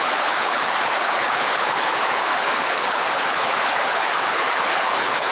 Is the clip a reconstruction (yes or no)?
yes